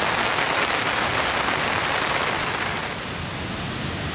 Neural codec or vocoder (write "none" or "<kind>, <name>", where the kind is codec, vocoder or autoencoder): none